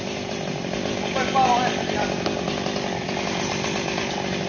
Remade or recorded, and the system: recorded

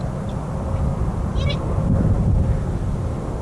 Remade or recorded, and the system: recorded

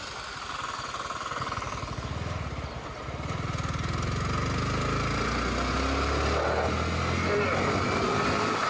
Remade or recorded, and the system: recorded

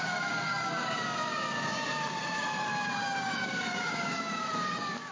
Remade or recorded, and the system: remade, codec, DAC